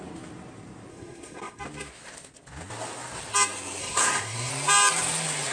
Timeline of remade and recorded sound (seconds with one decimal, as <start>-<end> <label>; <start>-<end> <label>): 0.0-0.9 recorded; 0.9-1.6 remade; 1.6-3.8 recorded; 3.8-4.5 remade; 4.5-5.5 recorded